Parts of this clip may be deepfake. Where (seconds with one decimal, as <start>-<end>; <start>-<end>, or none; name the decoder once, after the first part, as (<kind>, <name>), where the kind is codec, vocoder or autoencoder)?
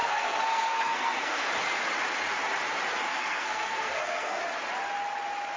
0.0-1.5 (codec, SNAC); 3.1-4.4